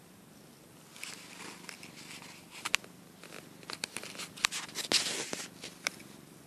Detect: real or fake real